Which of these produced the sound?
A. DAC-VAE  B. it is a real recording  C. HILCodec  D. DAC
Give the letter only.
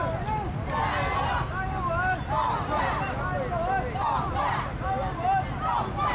B